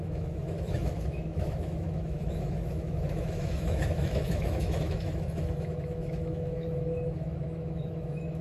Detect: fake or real fake